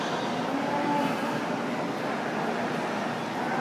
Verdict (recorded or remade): recorded